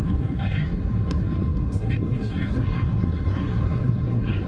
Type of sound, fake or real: fake